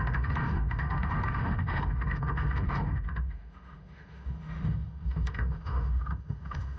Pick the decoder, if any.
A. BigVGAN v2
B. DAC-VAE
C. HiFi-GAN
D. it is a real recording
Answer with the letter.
B